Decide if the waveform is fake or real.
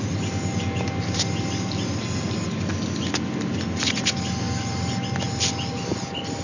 real